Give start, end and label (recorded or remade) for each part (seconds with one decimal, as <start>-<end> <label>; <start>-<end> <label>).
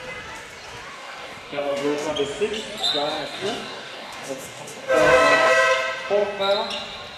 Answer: 0.0-0.9 recorded; 0.9-2.1 remade; 2.1-3.1 recorded; 3.1-5.5 remade; 5.5-7.2 recorded